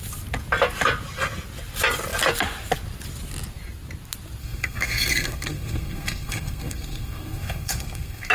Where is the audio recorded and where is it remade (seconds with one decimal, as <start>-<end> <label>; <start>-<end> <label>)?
0.0-4.4 recorded; 4.4-8.3 remade